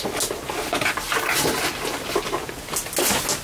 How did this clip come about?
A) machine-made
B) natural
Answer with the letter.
B